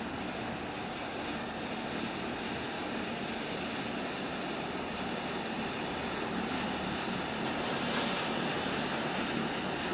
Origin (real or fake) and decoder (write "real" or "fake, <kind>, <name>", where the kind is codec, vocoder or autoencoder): real